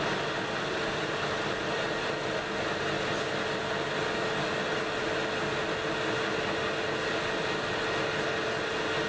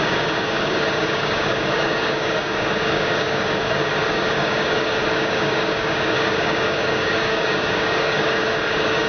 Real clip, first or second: first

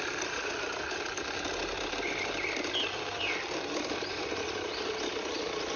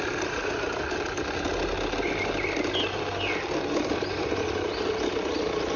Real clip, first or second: second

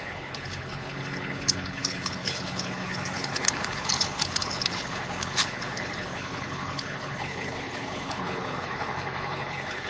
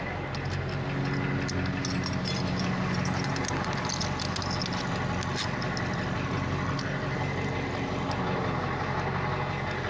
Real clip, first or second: second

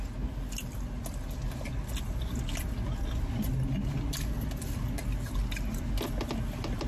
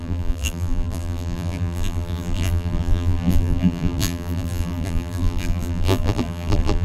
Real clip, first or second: first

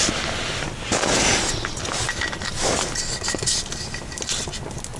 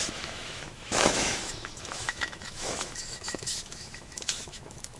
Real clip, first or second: first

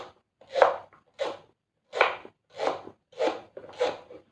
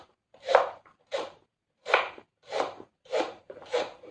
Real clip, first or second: first